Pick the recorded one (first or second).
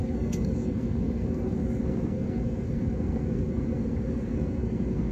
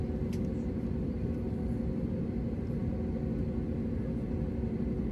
second